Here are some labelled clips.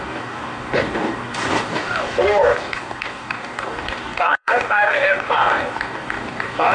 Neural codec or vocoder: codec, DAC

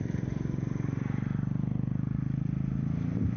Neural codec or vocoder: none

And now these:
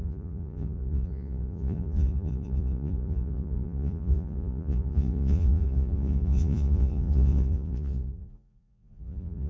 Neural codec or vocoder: vocoder, Vocos